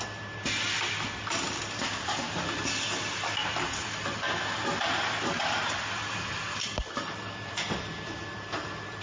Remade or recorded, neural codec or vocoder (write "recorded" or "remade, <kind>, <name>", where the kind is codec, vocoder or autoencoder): recorded